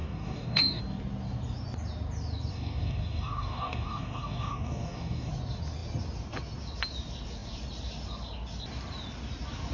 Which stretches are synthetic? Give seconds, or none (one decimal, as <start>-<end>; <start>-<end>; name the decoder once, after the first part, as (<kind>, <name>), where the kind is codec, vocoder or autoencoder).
0.0-0.8 (codec, DAC); 2.5-5.3